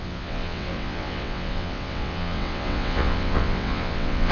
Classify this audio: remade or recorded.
remade